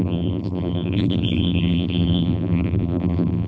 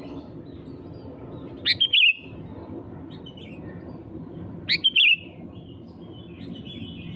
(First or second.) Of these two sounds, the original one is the second